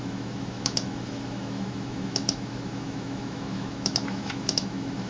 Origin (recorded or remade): remade